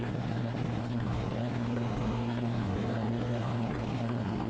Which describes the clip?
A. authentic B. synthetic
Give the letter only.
B